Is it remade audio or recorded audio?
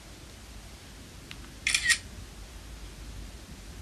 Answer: recorded